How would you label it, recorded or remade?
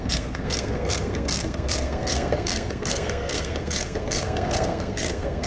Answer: remade